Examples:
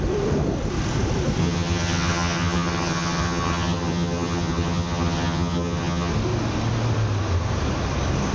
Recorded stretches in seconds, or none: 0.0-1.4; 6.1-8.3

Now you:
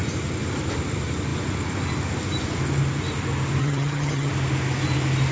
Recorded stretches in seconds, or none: 0.0-3.6; 4.3-5.3

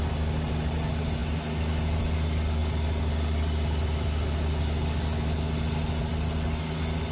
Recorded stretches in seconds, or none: 0.0-7.1